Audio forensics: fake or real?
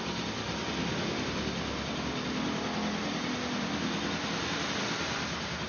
real